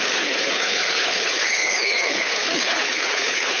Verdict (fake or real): fake